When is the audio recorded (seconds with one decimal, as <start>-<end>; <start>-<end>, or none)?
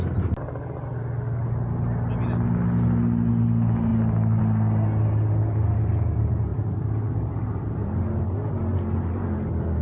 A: 0.0-6.5; 8.0-9.8